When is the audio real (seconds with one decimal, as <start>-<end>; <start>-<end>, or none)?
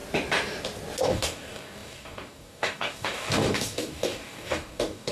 0.0-1.0